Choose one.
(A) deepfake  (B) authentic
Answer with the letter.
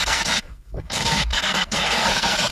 A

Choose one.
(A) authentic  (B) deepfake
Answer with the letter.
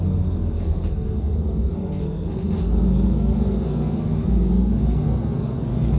B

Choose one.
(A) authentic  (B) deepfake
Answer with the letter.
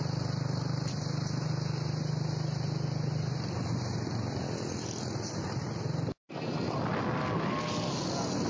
A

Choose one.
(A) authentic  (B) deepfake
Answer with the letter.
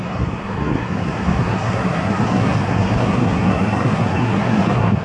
B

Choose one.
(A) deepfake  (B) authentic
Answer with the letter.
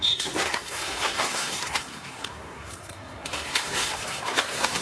A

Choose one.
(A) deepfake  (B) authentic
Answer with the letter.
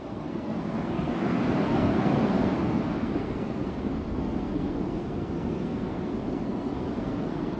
A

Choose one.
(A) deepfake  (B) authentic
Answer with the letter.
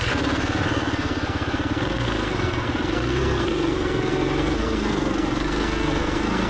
A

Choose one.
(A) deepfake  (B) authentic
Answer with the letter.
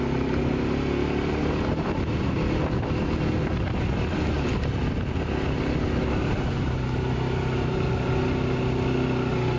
B